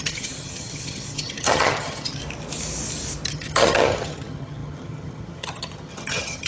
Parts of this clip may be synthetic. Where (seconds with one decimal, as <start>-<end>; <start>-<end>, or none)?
0.0-2.2; 3.3-6.5

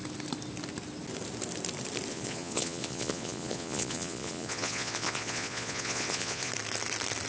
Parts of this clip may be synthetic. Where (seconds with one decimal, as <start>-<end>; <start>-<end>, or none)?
2.1-6.5